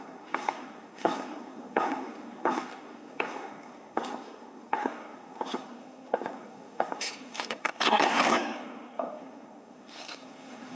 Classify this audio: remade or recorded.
remade